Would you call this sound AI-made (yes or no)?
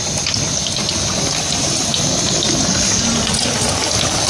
no